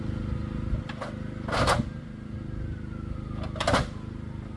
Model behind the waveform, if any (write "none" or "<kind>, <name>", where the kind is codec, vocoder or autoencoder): none